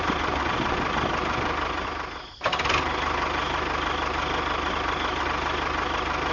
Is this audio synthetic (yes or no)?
no